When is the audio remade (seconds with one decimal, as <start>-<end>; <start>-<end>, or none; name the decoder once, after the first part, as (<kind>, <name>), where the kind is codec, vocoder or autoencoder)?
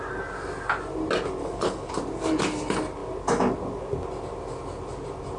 1.4-1.9 (codec, HILCodec)